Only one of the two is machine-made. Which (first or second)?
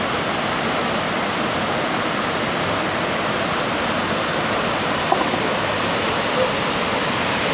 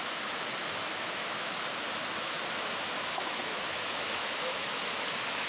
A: second